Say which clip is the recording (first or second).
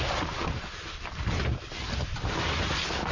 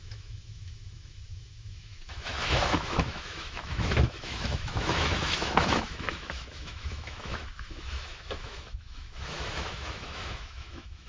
first